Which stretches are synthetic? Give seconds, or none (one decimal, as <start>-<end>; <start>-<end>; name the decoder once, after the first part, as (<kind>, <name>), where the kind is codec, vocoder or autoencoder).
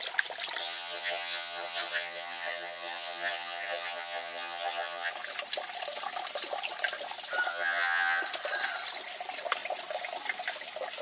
0.6-5.1 (vocoder, HiFi-GAN); 7.5-8.2